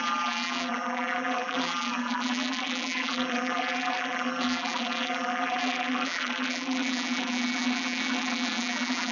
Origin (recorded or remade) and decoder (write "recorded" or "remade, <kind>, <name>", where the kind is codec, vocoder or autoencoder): remade, vocoder, BigVGAN v2